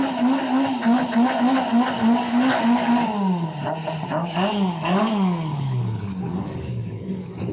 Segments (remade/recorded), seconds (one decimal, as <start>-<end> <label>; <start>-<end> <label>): 0.0-4.2 recorded; 4.2-7.5 remade